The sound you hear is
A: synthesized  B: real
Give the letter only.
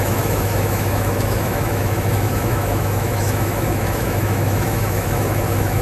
A